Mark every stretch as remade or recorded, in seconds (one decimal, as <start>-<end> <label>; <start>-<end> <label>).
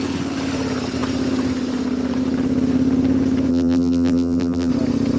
0.0-3.5 recorded; 3.5-4.7 remade; 4.7-5.2 recorded